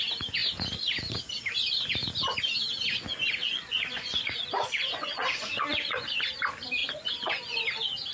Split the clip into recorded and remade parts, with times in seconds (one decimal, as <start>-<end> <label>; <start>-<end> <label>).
0.0-3.4 recorded; 3.4-6.1 remade; 6.1-6.8 recorded; 6.8-7.6 remade; 7.6-8.1 recorded